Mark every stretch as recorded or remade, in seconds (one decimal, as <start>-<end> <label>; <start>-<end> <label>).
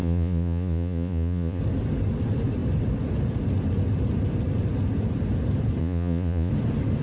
0.0-1.6 remade; 1.6-5.8 recorded; 5.8-6.5 remade; 6.5-7.0 recorded